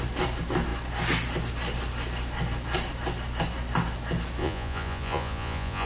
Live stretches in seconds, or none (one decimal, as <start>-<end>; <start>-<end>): 0.0-4.4